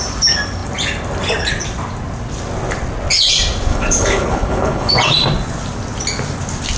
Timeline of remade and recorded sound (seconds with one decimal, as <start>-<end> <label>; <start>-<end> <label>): 0.0-3.7 recorded; 3.7-4.9 remade; 4.9-6.8 recorded